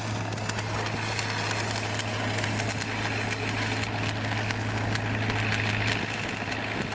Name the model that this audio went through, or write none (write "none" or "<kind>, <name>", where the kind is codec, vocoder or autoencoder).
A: none